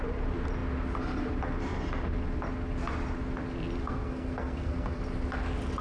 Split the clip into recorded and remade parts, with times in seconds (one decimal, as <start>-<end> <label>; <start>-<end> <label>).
0.0-3.8 recorded; 3.8-5.0 remade; 5.0-5.8 recorded